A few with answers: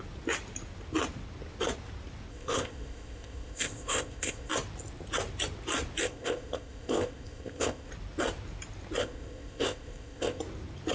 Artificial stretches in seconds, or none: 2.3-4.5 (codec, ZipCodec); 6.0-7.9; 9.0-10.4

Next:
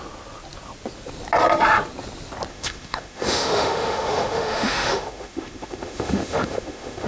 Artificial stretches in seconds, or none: 2.5-7.1 (autoencoder, DAC-VAE)

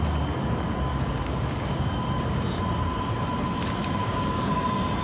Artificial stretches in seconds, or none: 0.9-2.6 (codec, DAC); 3.8-4.5

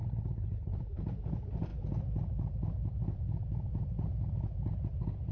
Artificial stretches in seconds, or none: 0.0-0.8 (codec, HILCodec)